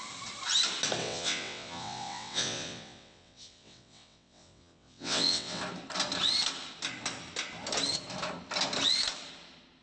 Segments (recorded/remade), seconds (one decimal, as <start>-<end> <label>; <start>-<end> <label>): 0.0-1.0 recorded; 1.0-5.6 remade; 5.6-9.8 recorded